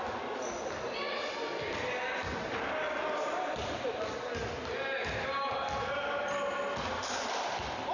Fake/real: real